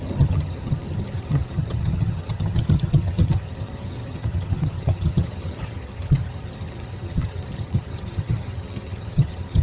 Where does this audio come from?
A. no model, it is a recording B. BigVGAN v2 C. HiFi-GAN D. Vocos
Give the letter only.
C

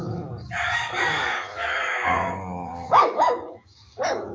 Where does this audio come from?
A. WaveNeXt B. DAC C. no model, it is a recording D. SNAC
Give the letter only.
B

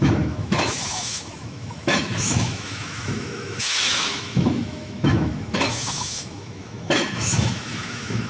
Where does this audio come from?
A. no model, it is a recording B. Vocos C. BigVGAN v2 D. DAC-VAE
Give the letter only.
D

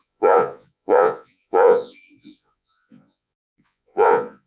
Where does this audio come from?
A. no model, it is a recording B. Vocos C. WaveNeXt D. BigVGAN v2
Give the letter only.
B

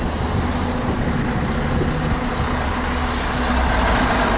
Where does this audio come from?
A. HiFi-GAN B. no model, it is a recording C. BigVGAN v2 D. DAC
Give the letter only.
B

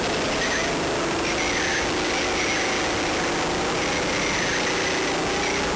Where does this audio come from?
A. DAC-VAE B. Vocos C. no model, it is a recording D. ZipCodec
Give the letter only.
C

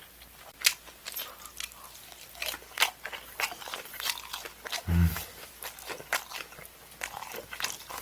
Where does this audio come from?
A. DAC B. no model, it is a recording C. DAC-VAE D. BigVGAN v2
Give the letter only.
B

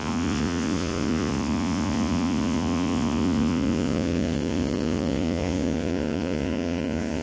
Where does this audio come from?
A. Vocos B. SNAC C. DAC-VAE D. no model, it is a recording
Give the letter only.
A